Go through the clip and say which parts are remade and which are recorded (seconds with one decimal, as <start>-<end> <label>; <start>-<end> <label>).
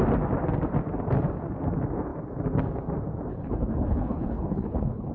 0.0-3.3 recorded; 3.3-5.1 remade